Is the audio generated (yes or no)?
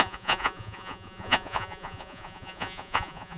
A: yes